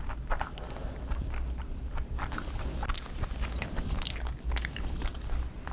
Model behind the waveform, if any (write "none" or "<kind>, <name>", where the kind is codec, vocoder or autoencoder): none